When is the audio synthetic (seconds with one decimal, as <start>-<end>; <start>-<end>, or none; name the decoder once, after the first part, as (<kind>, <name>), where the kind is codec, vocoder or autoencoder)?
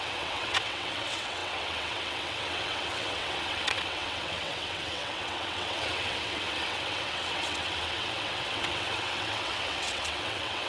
0.0-10.7 (vocoder, WaveNeXt)